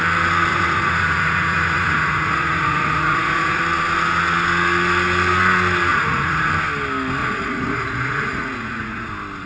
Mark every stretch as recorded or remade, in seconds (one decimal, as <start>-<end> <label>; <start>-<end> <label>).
0.0-0.5 recorded; 0.5-3.6 remade; 3.6-5.9 recorded; 5.9-6.5 remade; 6.5-7.2 recorded; 7.2-9.1 remade; 9.1-9.5 recorded